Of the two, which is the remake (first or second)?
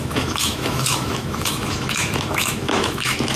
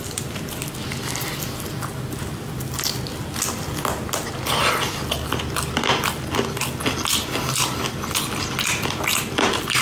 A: first